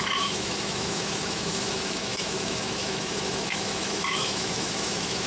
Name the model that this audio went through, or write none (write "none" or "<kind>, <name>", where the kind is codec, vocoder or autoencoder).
autoencoder, DAC-VAE